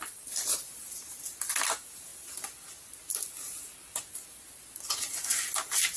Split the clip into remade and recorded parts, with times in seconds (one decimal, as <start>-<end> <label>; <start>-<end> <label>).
0.0-1.3 remade; 1.3-2.1 recorded; 2.1-4.3 remade; 4.3-6.0 recorded